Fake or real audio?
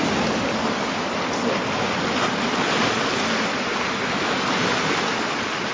real